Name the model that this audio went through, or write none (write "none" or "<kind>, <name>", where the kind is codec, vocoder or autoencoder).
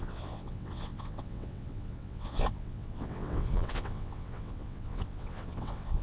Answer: vocoder, WaveNeXt